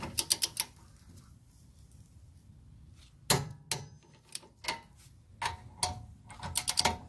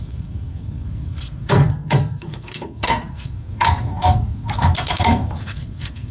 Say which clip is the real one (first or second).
first